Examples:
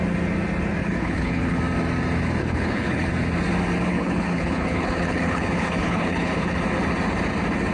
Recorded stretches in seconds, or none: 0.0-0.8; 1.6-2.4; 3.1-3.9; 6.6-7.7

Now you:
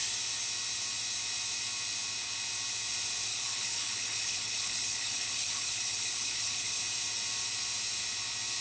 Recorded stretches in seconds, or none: 0.0-3.3; 6.8-8.6